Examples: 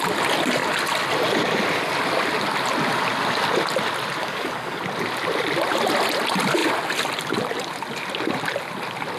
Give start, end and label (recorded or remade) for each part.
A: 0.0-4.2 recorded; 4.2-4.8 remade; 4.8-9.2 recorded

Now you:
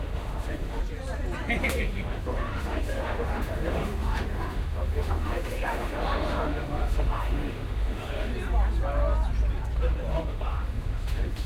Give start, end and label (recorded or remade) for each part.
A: 0.0-0.8 remade; 0.8-1.6 recorded; 1.6-8.3 remade; 8.3-10.1 recorded; 10.1-11.5 remade

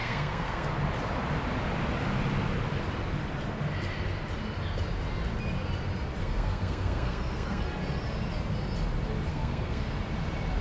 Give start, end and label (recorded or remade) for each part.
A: 0.0-0.7 remade; 0.7-6.2 recorded; 6.2-7.6 remade; 7.6-9.3 recorded; 9.3-9.9 remade; 9.9-10.6 recorded

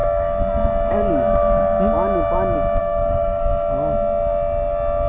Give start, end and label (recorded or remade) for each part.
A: 0.0-2.8 recorded; 2.8-3.5 remade; 3.5-5.1 recorded